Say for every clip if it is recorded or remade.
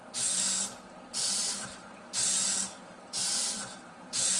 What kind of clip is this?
remade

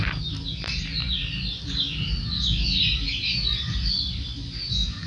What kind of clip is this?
recorded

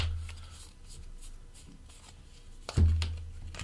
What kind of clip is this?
recorded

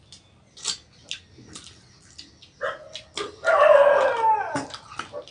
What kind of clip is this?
recorded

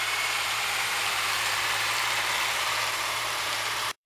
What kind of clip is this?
remade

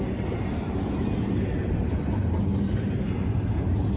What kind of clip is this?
recorded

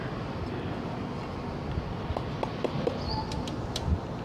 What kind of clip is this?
recorded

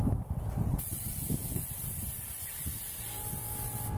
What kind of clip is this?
recorded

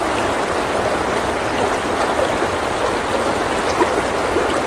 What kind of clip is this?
recorded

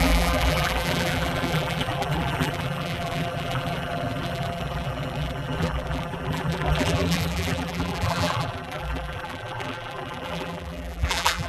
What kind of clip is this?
remade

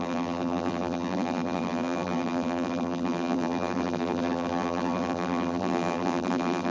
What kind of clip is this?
remade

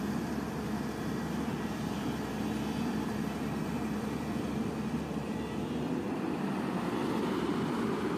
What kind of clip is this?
remade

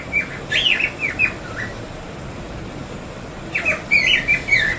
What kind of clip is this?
recorded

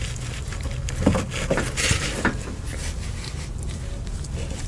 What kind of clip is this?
recorded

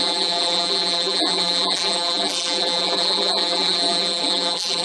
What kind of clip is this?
remade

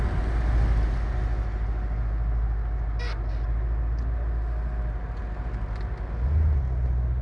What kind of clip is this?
recorded